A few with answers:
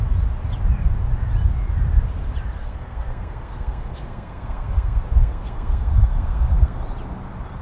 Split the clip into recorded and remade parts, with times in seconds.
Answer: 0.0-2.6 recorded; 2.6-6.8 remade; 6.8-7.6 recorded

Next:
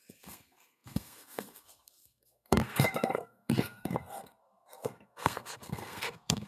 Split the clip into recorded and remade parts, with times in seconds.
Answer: 0.0-6.5 remade

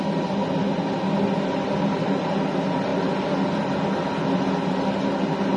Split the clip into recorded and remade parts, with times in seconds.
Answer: 0.0-5.6 recorded

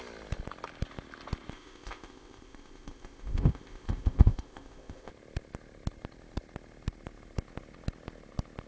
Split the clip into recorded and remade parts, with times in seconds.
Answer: 0.0-1.5 recorded; 1.5-5.1 remade; 5.1-8.7 recorded

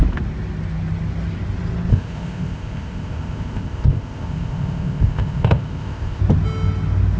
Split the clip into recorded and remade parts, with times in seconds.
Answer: 0.0-1.9 recorded; 1.9-6.2 remade; 6.2-7.2 recorded

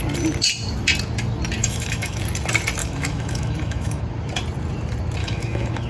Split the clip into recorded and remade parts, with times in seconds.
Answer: 0.0-1.6 recorded; 1.6-2.2 remade; 2.2-2.8 recorded; 2.8-4.0 remade; 4.0-5.2 recorded; 5.2-5.9 remade

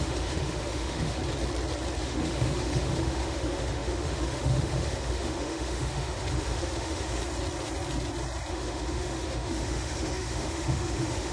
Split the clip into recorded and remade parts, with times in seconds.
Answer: 0.0-1.2 remade; 1.2-2.0 recorded; 2.0-7.2 remade; 7.2-8.5 recorded; 8.5-11.3 remade

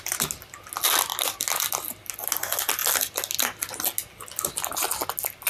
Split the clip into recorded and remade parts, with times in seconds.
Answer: 0.0-5.5 recorded